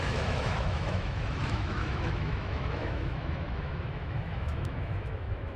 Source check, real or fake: fake